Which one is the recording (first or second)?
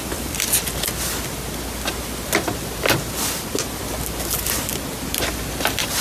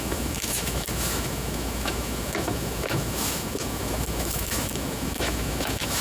first